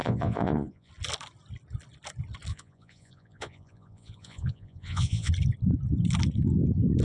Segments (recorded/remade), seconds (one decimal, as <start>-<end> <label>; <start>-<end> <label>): 0.0-0.9 remade; 0.9-2.5 recorded; 2.5-5.3 remade; 5.3-7.0 recorded